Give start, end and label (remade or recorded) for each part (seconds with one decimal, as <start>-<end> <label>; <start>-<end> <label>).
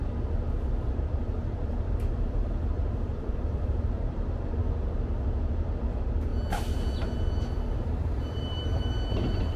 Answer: 0.0-0.8 recorded; 0.8-4.6 remade; 4.6-5.8 recorded; 5.8-6.3 remade; 6.3-7.9 recorded; 7.9-9.6 remade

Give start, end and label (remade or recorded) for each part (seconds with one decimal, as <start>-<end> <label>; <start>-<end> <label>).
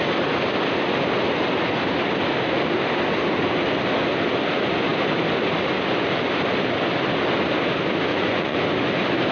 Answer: 0.0-8.1 recorded; 8.1-8.6 remade; 8.6-9.3 recorded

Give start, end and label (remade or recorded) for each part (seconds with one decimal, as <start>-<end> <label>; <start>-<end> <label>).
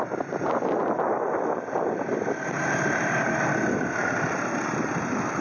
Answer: 0.0-5.4 recorded